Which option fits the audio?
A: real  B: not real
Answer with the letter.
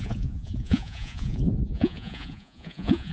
B